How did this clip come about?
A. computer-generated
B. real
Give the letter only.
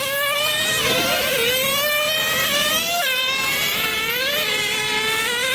A